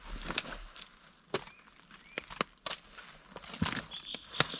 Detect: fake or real real